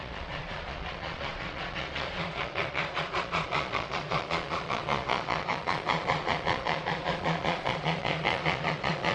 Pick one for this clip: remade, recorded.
remade